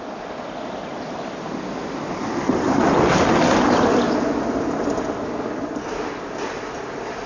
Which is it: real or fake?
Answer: real